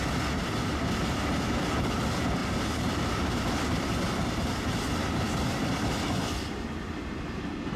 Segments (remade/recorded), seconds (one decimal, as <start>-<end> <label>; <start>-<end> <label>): 0.0-2.4 recorded; 2.4-3.5 remade; 3.5-7.8 recorded